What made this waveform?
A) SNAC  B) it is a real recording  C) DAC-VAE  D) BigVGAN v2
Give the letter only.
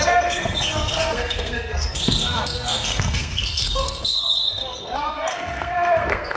A